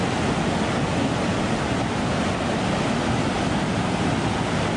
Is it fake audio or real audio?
real